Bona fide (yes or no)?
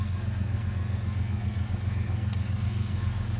no